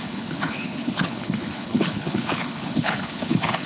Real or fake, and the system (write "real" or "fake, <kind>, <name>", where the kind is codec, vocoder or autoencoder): fake, codec, HILCodec